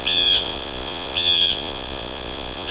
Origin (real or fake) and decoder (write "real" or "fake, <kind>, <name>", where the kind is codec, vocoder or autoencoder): fake, vocoder, Vocos